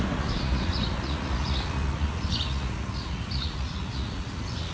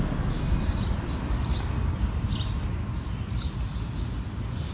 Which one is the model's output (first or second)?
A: first